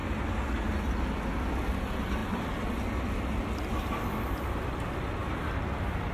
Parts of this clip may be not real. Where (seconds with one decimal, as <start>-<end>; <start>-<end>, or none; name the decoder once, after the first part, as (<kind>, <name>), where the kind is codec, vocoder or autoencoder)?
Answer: none

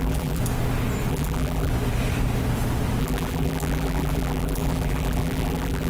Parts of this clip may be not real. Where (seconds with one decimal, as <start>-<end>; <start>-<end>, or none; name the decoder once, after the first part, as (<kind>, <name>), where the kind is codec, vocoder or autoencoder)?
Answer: 0.0-0.4 (vocoder, BigVGAN v2); 1.1-1.7; 3.0-5.9

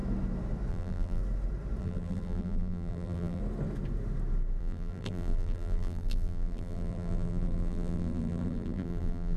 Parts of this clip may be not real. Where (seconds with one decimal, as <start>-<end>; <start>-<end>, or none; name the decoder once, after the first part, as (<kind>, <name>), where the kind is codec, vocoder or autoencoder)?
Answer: 0.7-1.2 (vocoder, BigVGAN v2); 1.8-3.4; 4.6-9.4

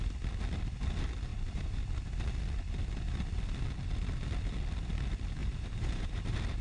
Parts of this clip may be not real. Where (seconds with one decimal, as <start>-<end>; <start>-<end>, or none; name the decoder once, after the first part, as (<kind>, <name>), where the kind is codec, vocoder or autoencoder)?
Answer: 1.3-1.8 (vocoder, BigVGAN v2); 5.4-6.6

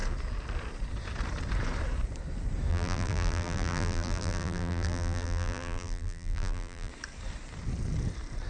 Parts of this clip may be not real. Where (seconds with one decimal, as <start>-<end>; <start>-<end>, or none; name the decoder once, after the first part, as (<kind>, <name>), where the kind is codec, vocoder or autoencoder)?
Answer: 2.7-6.9 (vocoder, BigVGAN v2)

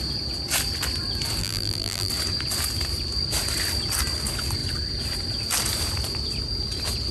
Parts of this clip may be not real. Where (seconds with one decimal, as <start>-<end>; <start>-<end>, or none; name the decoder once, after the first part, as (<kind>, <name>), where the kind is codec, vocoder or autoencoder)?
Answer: 1.4-2.1 (vocoder, BigVGAN v2)

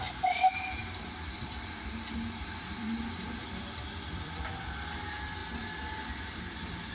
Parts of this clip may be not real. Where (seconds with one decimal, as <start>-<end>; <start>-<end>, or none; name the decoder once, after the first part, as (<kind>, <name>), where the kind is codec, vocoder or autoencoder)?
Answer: 0.8-4.8 (vocoder, BigVGAN v2); 5.4-6.9